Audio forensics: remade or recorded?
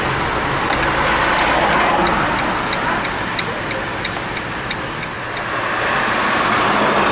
recorded